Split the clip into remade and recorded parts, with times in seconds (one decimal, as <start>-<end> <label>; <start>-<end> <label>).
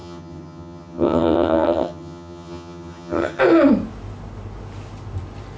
0.0-3.4 remade; 3.4-5.6 recorded